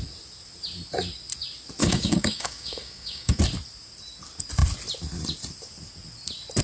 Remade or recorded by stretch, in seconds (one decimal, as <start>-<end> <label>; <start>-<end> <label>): 0.0-1.8 recorded; 1.8-3.4 remade; 3.4-6.6 recorded